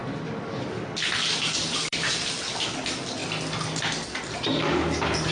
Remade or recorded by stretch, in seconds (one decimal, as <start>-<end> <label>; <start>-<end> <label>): 0.0-1.6 recorded; 1.6-2.1 remade; 2.1-5.3 recorded